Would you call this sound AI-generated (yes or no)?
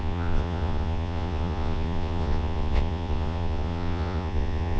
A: yes